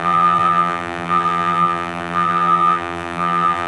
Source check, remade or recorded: remade